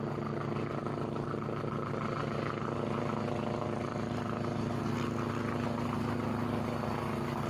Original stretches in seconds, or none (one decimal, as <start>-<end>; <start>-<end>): 0.0-7.5